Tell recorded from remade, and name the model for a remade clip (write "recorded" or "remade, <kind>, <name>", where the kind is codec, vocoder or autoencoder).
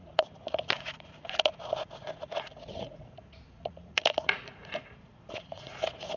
remade, vocoder, Vocos